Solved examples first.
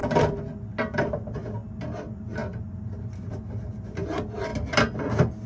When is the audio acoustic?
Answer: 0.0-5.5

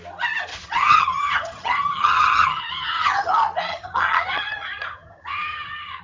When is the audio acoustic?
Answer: 0.0-0.5; 3.3-3.7

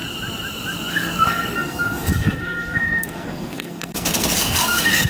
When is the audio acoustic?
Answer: 0.0-0.9

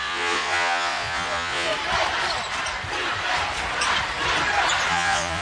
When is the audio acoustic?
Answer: 1.7-4.9

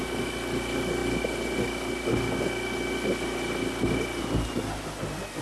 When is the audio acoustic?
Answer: 0.0-5.4

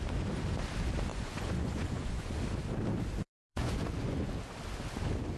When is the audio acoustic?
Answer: 0.0-1.1; 2.4-3.5; 4.3-5.4

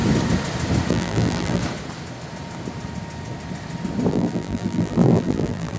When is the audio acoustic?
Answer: 0.0-0.9; 1.6-4.1